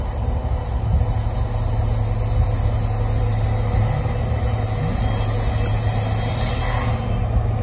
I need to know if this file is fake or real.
real